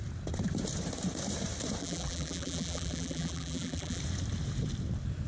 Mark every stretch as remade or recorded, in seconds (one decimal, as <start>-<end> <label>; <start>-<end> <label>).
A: 0.0-1.8 recorded; 1.8-4.0 remade; 4.0-5.3 recorded

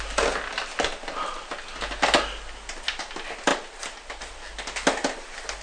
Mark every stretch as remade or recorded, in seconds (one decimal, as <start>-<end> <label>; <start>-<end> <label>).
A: 0.0-3.5 recorded; 3.5-4.2 remade; 4.2-5.6 recorded

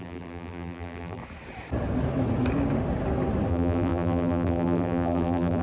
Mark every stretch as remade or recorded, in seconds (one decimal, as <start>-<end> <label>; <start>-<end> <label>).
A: 0.0-1.2 remade; 1.2-3.5 recorded; 3.5-5.6 remade

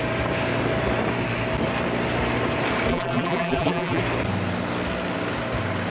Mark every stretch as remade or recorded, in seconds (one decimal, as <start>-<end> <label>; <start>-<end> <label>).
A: 0.0-2.9 recorded; 2.9-4.0 remade; 4.0-5.9 recorded

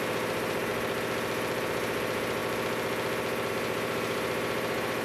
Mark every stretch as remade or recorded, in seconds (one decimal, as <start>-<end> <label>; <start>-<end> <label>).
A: 0.0-0.7 remade; 0.7-1.6 recorded; 1.6-2.4 remade; 2.4-3.5 recorded; 3.5-5.0 remade